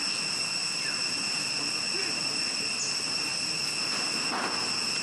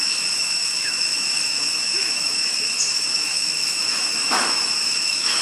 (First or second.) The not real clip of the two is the second